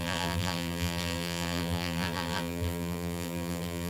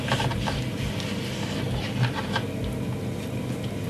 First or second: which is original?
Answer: second